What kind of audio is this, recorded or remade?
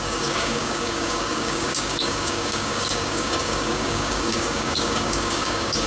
remade